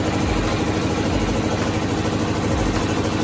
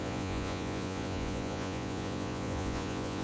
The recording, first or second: first